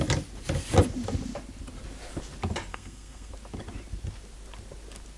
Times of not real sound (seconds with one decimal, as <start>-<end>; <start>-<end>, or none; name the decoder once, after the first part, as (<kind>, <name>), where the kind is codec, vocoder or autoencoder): 2.7-3.3 (codec, SNAC)